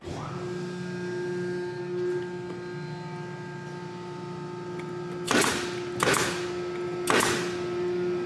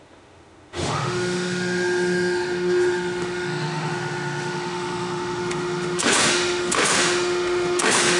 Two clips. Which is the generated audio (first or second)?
second